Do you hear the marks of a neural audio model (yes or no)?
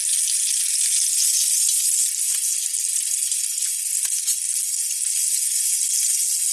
no